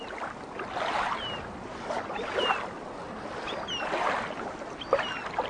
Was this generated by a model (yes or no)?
no